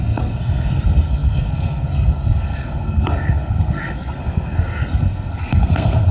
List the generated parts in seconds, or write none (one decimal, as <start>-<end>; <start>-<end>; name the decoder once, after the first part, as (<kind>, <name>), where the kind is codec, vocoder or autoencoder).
0.0-6.1 (codec, SNAC)